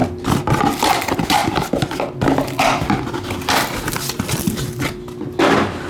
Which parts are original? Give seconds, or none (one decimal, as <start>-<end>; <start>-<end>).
0.0-5.9